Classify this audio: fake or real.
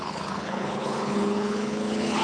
fake